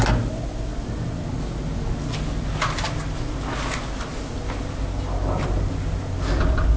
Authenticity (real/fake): real